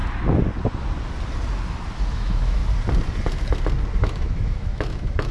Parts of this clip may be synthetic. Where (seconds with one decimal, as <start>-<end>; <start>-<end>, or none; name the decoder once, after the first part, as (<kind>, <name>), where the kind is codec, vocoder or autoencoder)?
2.1-2.6 (autoencoder, DAC-VAE); 4.0-5.3